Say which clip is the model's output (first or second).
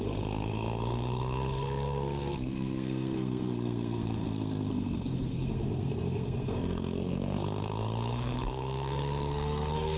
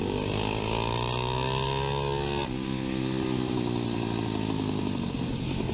first